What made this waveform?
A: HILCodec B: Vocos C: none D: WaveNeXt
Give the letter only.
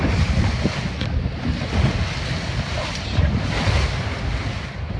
C